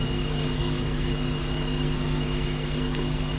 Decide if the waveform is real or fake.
fake